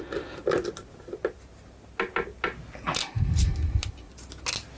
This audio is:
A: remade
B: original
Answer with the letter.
B